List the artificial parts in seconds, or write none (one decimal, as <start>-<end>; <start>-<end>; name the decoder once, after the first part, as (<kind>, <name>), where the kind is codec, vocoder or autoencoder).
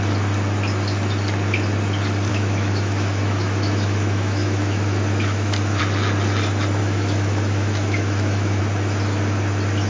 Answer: 2.3-5.8 (autoencoder, DAC-VAE); 6.8-8.6